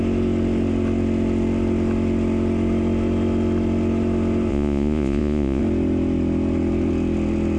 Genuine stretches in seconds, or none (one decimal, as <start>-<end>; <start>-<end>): 0.0-4.5; 5.6-7.6